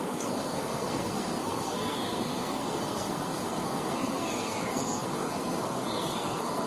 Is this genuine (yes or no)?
no